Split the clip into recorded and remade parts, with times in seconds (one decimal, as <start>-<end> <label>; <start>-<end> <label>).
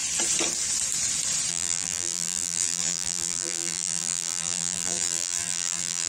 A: 0.0-1.5 recorded; 1.5-6.1 remade